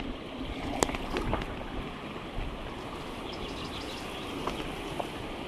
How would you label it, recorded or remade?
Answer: recorded